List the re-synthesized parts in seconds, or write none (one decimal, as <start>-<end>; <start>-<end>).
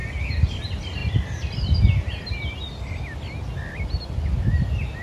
none